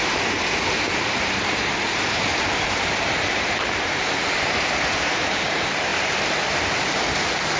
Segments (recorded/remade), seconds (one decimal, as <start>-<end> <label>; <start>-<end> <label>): 0.0-5.9 remade; 5.9-7.6 recorded